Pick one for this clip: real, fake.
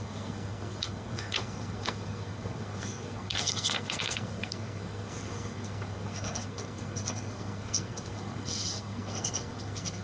fake